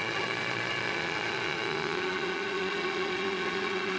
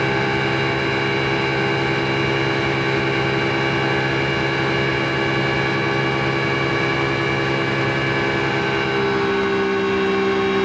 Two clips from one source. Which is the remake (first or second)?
first